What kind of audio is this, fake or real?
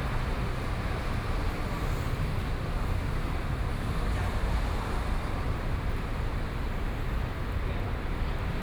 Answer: fake